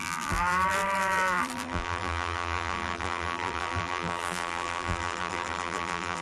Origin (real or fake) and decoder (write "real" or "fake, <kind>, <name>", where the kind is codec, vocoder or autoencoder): fake, vocoder, BigVGAN v2